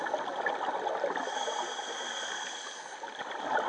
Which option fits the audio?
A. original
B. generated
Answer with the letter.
A